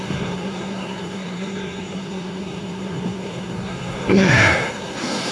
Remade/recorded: remade